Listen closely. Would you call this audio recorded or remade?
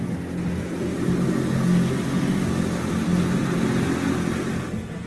recorded